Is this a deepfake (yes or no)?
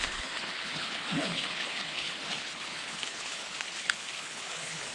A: yes